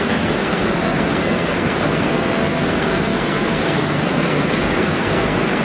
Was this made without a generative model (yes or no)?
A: no